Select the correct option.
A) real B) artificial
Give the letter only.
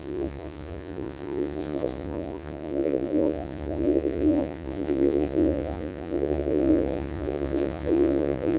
B